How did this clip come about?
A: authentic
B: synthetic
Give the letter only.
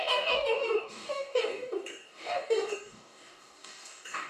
B